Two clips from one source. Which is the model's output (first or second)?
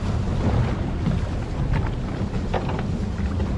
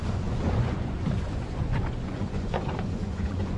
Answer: second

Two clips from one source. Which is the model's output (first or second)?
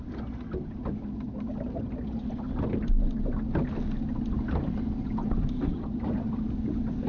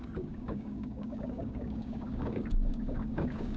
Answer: second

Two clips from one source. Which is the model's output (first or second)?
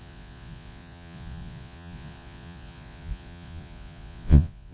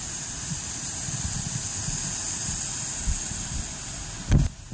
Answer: first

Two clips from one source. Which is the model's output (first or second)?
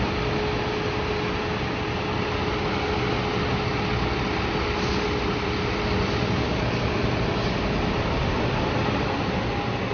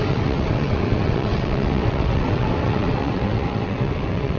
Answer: second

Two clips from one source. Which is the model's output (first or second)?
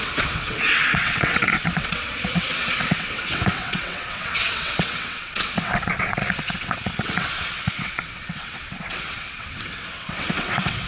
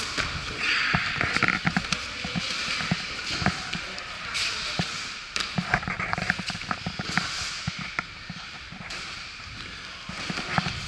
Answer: first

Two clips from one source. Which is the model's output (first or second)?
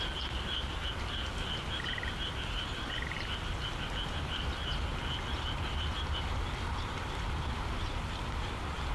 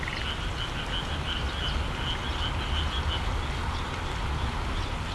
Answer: first